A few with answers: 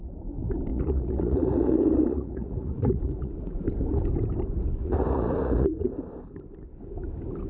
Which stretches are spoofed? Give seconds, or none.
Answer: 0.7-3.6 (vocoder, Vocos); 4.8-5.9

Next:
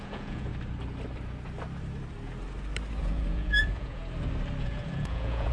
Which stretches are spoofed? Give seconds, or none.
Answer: 0.0-0.5 (vocoder, Vocos); 3.0-4.0; 4.6-5.5

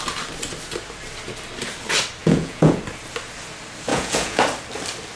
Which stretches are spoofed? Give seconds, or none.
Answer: 2.2-2.8 (vocoder, Vocos); 3.9-4.4